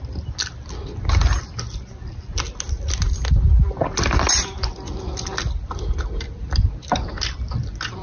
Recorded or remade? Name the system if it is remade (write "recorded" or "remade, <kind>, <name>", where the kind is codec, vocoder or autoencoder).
recorded